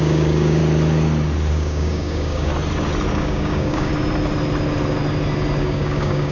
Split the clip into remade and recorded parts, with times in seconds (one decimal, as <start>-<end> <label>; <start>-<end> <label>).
0.0-0.6 remade; 0.6-1.5 recorded; 1.5-2.5 remade; 2.5-3.1 recorded; 3.1-3.9 remade; 3.9-5.6 recorded; 5.6-6.3 remade